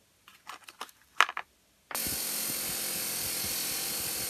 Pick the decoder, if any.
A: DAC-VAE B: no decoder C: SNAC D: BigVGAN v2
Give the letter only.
B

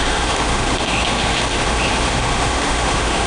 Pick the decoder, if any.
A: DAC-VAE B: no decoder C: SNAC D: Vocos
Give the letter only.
A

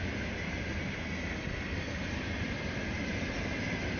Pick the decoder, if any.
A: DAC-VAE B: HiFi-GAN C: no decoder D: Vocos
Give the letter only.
C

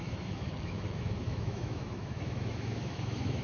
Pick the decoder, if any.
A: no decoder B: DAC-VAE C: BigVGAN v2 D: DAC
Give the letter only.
B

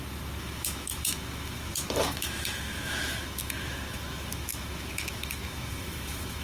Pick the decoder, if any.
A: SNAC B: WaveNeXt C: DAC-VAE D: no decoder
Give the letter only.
C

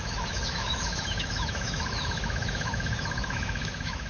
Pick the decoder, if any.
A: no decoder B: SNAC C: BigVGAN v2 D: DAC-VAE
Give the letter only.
D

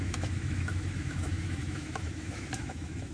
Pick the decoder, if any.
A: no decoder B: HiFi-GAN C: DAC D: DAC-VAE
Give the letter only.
D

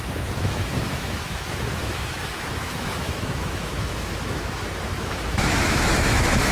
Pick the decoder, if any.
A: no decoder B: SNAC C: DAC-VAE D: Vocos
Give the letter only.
C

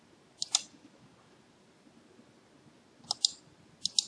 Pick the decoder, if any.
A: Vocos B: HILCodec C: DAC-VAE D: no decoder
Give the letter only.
D